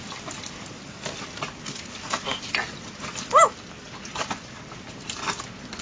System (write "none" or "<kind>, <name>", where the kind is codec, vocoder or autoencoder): none